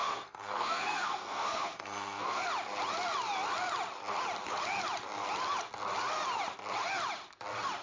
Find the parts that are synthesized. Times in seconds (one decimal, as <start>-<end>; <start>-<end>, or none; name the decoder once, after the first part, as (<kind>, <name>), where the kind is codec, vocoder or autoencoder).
0.0-2.4 (codec, SNAC)